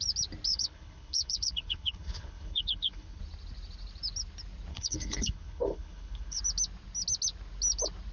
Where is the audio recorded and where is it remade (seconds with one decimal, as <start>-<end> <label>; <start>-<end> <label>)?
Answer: 0.0-0.5 recorded; 0.5-3.2 remade; 3.2-4.7 recorded; 4.7-6.4 remade; 6.4-8.1 recorded